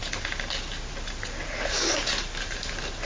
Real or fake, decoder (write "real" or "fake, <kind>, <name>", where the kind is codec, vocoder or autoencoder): real